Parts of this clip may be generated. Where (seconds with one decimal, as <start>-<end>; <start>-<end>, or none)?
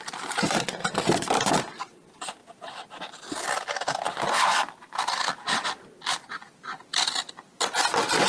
none